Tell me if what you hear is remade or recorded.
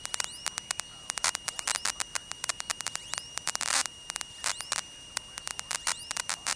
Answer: remade